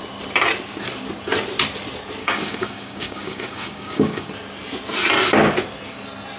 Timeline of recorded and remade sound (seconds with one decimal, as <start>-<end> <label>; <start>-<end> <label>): 0.0-2.2 recorded; 2.2-4.3 remade; 4.3-6.4 recorded